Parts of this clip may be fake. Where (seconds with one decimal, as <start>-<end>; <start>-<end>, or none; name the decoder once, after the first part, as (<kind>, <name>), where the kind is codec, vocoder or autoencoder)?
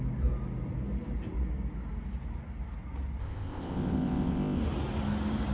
3.2-4.6 (codec, ZipCodec)